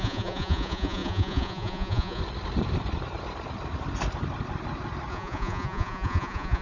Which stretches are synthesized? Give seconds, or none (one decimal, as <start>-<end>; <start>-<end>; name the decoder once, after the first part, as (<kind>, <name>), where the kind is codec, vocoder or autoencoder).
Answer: 0.0-2.2 (vocoder, Vocos); 5.1-6.6